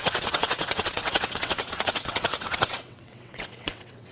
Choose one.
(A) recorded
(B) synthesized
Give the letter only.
B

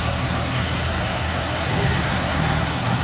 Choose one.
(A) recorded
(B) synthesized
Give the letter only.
B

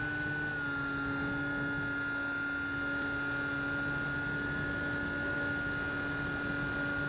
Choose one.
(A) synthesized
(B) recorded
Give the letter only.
B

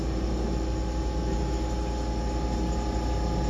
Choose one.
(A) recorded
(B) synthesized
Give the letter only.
A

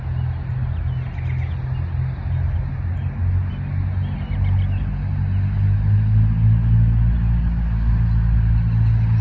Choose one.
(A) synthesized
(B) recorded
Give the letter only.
B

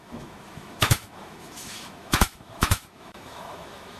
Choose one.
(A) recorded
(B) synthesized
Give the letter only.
B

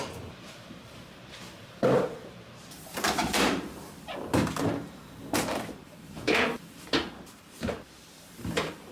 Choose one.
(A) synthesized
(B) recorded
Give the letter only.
A